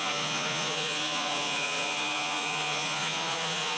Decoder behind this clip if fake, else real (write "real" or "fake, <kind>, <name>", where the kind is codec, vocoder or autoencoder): fake, vocoder, Vocos